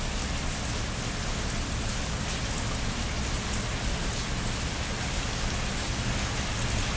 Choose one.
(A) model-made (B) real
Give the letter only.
B